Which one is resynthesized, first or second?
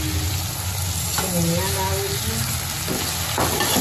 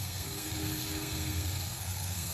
second